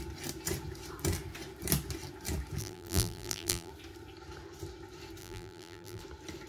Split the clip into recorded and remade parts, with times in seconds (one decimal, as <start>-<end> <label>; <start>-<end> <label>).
0.0-2.6 recorded; 2.6-3.7 remade; 3.7-5.2 recorded; 5.2-6.0 remade; 6.0-6.5 recorded